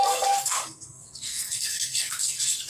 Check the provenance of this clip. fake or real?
fake